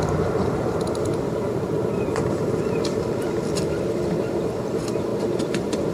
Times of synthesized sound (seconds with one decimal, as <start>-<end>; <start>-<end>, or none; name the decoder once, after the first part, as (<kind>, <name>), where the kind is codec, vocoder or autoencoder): 0.0-5.9 (vocoder, BigVGAN v2)